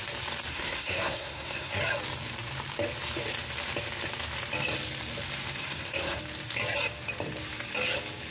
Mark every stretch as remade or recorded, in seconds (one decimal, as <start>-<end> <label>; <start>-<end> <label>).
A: 0.0-0.5 recorded; 0.5-1.8 remade; 1.8-5.6 recorded; 5.6-6.2 remade; 6.2-8.3 recorded